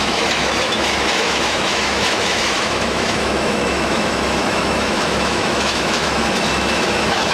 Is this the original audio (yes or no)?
no